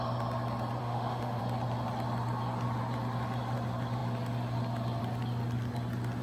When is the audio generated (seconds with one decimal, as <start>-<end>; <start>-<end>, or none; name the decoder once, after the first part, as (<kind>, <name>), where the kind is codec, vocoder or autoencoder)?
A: 0.8-1.4 (autoencoder, DAC-VAE)